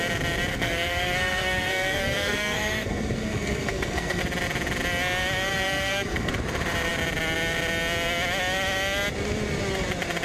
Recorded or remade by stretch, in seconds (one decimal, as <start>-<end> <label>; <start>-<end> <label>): 0.0-0.5 recorded; 0.5-4.2 remade; 4.2-5.5 recorded; 5.5-6.3 remade; 6.3-10.2 recorded